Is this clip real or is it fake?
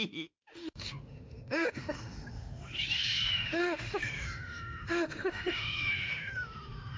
fake